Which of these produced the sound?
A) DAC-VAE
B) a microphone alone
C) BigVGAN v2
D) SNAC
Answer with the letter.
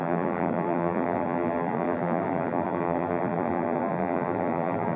C